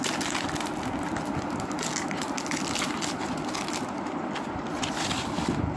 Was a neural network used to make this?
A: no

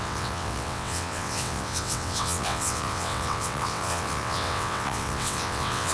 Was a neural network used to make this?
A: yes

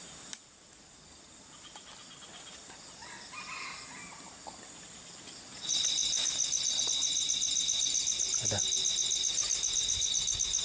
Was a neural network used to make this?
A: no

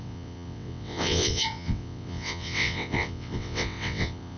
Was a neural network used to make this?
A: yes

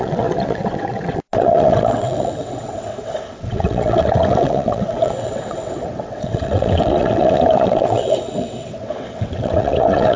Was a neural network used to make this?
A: yes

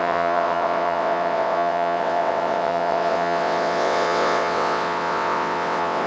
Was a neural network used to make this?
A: yes